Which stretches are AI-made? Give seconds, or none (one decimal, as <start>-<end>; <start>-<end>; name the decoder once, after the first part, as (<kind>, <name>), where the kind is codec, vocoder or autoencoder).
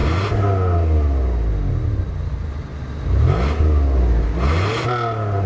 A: none